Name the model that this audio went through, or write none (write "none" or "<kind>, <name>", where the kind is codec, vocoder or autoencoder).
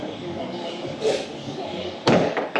codec, DAC